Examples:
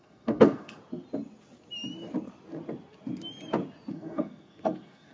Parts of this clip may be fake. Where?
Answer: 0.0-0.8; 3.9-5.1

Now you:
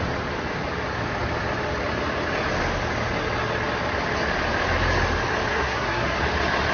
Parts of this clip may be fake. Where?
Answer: 5.5-6.2

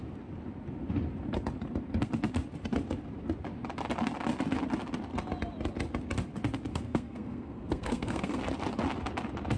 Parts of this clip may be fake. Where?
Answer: 6.7-8.4

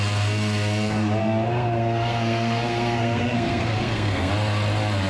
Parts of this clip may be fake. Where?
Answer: 1.2-4.3

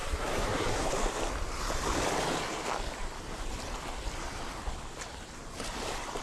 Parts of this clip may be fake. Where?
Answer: 0.0-0.9

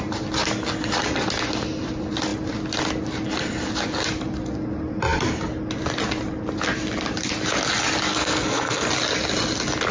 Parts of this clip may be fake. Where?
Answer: 8.1-8.9

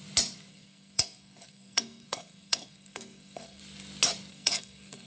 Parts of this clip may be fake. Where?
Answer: 0.5-3.6; 4.3-5.1